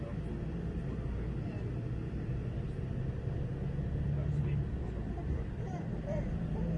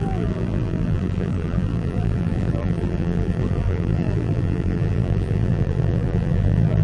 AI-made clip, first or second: second